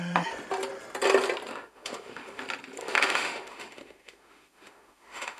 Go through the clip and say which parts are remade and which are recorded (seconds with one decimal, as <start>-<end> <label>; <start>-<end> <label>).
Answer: 0.0-1.5 recorded; 1.5-2.4 remade; 2.4-2.8 recorded; 2.8-5.4 remade